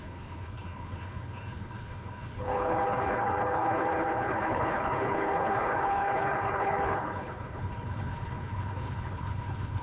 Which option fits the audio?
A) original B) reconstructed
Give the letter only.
B